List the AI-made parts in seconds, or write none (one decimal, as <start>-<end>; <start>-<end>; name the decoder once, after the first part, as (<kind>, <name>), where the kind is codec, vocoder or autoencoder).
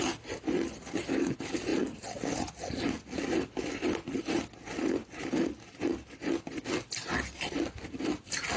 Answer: none